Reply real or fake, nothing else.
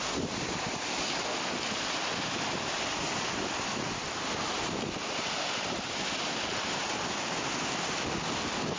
real